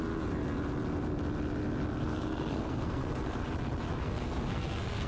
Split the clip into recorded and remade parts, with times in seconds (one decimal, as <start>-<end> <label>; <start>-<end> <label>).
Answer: 0.0-2.0 recorded; 2.0-3.5 remade; 3.5-3.9 recorded; 3.9-5.1 remade